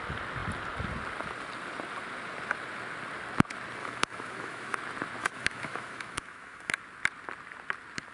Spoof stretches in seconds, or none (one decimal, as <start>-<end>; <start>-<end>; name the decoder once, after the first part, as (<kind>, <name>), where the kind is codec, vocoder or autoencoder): 3.8-4.8 (autoencoder, DAC-VAE); 5.2-6.8